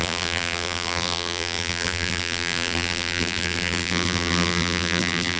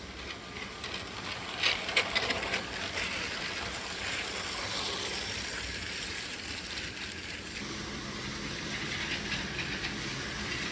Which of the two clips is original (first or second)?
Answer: second